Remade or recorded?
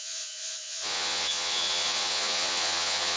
remade